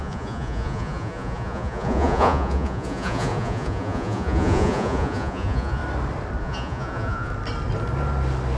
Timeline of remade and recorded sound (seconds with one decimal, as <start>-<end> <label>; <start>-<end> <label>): 0.0-5.8 remade; 5.8-6.4 recorded; 6.4-7.3 remade; 7.3-8.6 recorded